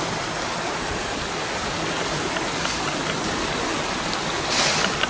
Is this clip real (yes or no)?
yes